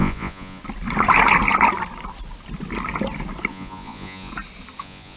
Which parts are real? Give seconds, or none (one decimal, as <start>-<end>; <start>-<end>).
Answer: 0.6-3.5; 4.3-4.8